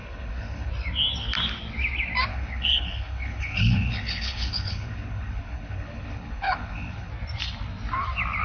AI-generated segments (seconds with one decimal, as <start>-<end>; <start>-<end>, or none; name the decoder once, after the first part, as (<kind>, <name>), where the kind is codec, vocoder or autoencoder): 0.0-0.7 (codec, HILCodec); 2.3-7.1